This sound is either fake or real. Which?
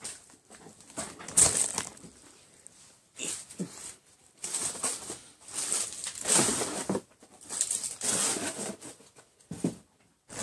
real